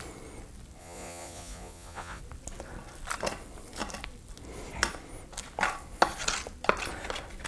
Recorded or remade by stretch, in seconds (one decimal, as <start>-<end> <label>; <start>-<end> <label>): 0.0-0.8 recorded; 0.8-2.2 remade; 2.2-7.5 recorded